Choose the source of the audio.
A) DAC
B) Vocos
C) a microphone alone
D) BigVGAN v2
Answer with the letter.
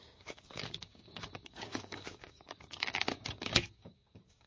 A